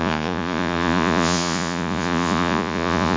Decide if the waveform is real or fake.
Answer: fake